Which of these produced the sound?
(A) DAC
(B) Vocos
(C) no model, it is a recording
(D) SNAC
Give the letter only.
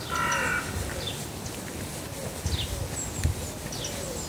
C